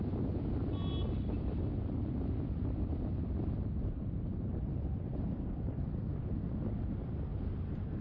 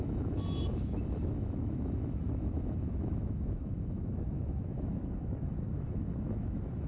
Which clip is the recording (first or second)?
first